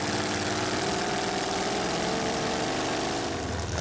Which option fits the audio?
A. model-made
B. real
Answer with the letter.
A